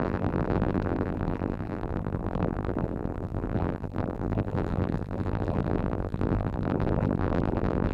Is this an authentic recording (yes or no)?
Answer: no